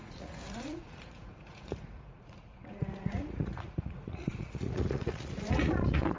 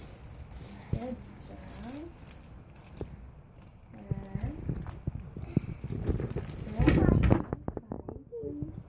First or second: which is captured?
second